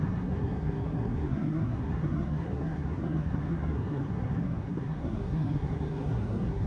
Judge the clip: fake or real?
fake